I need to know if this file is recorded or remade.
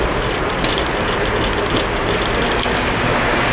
recorded